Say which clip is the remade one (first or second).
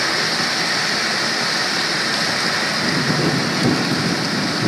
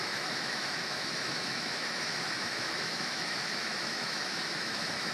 second